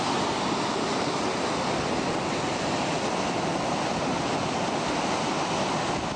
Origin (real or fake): real